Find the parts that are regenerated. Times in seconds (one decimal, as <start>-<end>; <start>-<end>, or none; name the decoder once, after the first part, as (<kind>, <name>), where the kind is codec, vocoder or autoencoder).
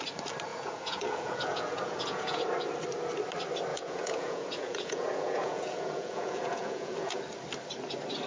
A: 0.5-2.4 (vocoder, Vocos); 3.7-7.2